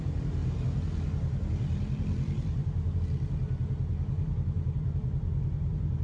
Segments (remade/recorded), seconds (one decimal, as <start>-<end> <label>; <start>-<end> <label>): 0.0-6.0 recorded